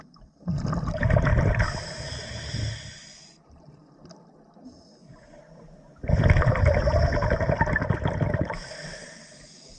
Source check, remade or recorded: recorded